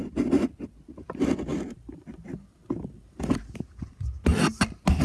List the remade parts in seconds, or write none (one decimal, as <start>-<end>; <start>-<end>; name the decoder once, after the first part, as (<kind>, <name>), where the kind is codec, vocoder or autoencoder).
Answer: 1.5-3.3 (vocoder, BigVGAN v2)